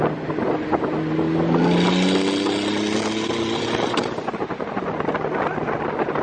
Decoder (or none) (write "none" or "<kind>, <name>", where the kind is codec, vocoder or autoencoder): none